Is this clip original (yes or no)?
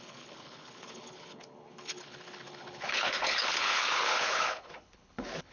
no